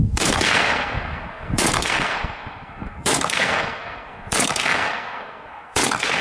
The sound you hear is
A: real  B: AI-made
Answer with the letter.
B